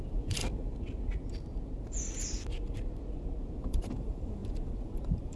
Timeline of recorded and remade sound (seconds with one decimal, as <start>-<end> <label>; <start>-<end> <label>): 0.0-0.4 remade; 0.4-3.6 recorded; 3.6-5.4 remade